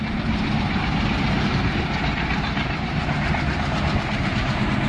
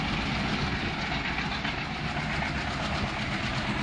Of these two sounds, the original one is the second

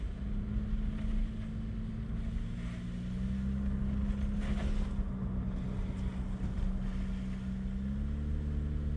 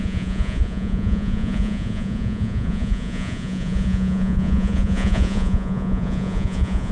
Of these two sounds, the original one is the first